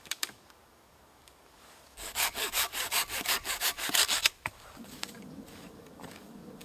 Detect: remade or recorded remade